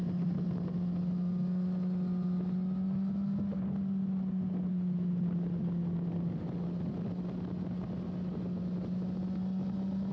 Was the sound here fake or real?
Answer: real